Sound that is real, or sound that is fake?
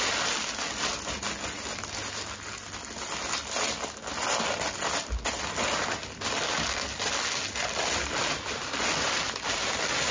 real